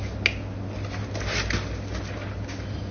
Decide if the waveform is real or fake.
real